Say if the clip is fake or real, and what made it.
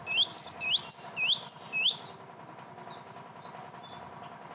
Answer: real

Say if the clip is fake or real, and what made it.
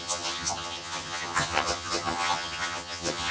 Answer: fake, vocoder, HiFi-GAN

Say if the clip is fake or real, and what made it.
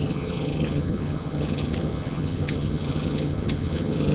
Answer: fake, vocoder, HiFi-GAN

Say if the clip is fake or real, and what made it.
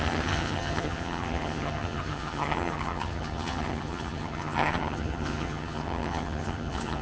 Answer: fake, vocoder, HiFi-GAN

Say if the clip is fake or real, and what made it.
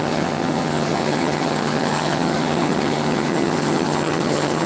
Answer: fake, vocoder, HiFi-GAN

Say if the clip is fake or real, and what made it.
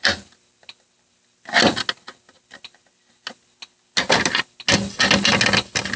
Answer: real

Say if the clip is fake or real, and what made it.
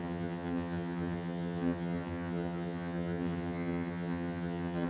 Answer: fake, vocoder, HiFi-GAN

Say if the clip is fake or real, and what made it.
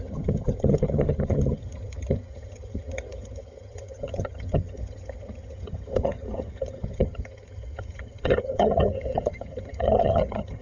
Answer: fake, vocoder, HiFi-GAN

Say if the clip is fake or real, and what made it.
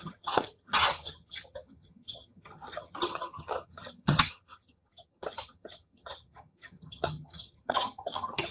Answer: fake, vocoder, HiFi-GAN